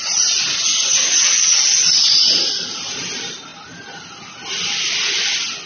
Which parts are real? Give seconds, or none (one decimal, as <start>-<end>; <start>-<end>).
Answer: 3.5-5.7